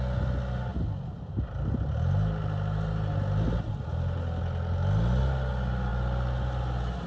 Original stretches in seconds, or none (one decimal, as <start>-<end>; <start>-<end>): 0.0-7.1